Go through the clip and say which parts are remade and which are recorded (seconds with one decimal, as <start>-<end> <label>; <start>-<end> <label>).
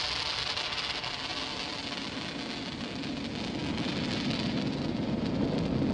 0.0-3.9 recorded; 3.9-5.3 remade; 5.3-5.9 recorded